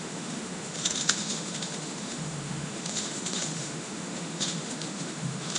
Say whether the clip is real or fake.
fake